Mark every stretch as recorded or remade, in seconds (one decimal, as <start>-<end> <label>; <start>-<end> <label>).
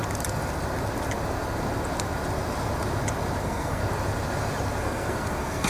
0.0-3.4 recorded; 3.4-3.8 remade; 3.8-4.8 recorded; 4.8-5.7 remade